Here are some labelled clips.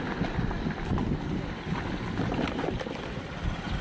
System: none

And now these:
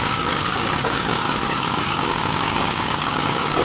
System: codec, DAC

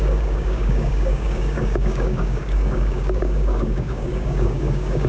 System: codec, DAC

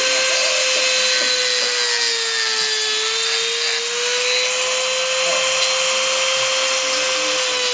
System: none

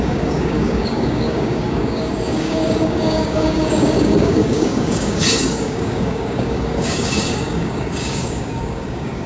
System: codec, DAC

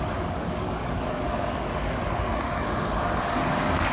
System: codec, DAC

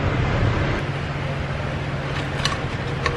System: none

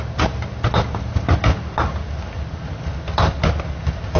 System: none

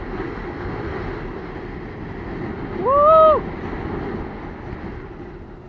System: none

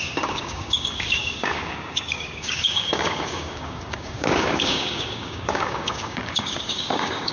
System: codec, DAC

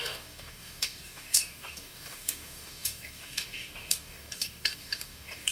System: codec, DAC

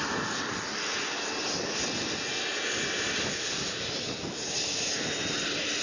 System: none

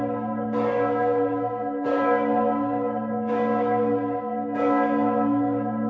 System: codec, DAC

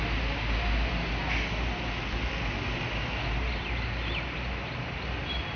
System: none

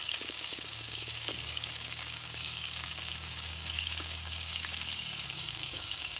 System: codec, DAC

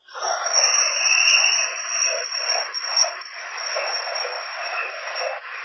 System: none